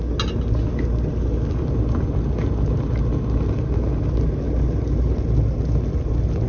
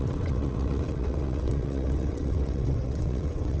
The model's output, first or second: second